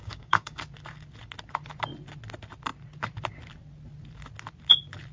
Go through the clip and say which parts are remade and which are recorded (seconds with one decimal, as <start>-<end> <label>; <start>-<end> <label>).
0.0-0.6 remade; 0.6-5.1 recorded